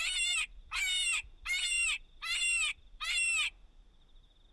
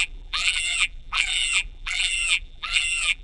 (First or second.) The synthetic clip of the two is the second